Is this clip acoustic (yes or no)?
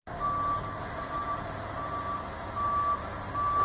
yes